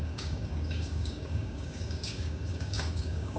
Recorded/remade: remade